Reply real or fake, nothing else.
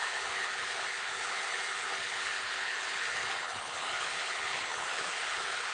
fake